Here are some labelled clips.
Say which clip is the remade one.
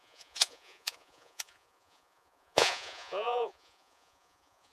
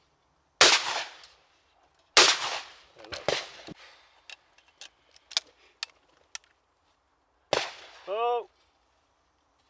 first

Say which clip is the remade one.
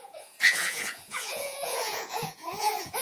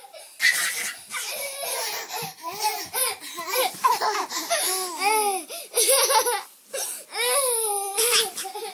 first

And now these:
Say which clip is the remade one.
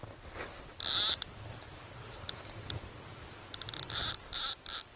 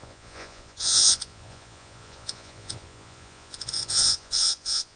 second